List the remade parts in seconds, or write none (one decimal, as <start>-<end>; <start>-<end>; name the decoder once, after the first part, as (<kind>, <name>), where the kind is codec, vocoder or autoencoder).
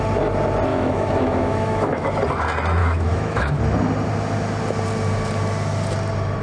0.7-2.1 (autoencoder, DAC-VAE); 2.8-3.6